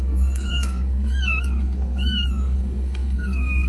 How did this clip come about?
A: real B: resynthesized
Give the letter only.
B